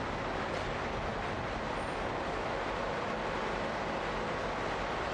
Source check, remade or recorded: recorded